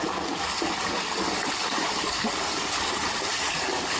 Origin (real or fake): fake